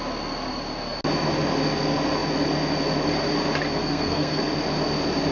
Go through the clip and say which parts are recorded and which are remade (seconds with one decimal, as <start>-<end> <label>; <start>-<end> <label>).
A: 0.0-3.8 recorded; 3.8-4.4 remade; 4.4-5.3 recorded